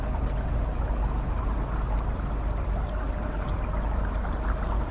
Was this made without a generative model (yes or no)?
yes